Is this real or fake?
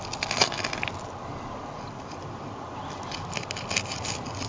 real